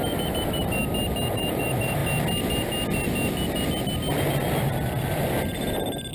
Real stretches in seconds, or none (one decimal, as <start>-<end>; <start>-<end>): 0.8-1.3; 2.0-6.1